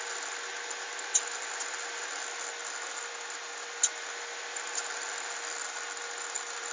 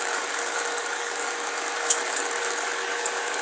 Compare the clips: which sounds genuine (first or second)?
first